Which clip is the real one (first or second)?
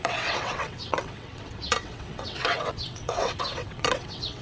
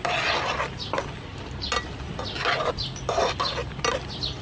second